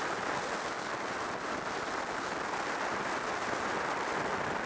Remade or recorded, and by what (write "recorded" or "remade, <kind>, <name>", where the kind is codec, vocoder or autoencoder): recorded